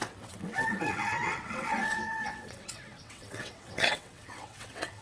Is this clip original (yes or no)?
no